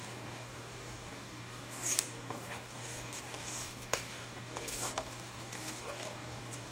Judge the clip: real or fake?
fake